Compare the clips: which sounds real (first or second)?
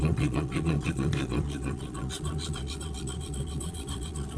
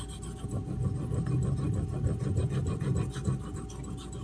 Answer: second